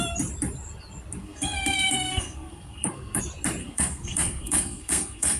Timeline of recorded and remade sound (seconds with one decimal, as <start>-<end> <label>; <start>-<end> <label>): 0.0-1.2 recorded; 1.2-3.2 remade; 3.2-3.6 recorded; 3.6-5.4 remade